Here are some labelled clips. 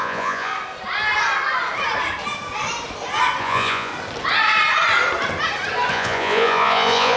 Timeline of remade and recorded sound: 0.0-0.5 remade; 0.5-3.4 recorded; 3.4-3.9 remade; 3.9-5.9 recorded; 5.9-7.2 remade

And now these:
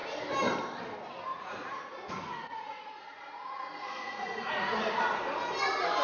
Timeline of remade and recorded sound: 0.0-1.3 recorded; 1.3-4.9 remade; 4.9-6.0 recorded

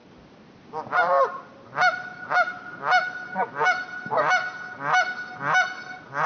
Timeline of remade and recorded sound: 0.0-6.3 recorded

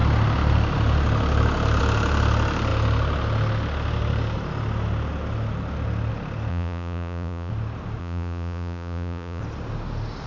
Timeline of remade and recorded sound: 0.0-6.5 recorded; 6.5-7.5 remade; 7.5-8.0 recorded; 8.0-9.4 remade; 9.4-10.3 recorded

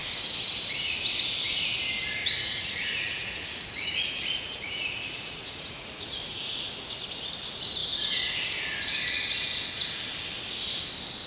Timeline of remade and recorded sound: 0.0-2.2 recorded; 2.2-6.7 remade; 6.7-11.3 recorded

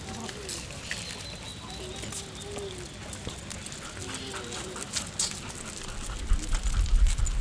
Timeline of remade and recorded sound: 0.0-7.4 recorded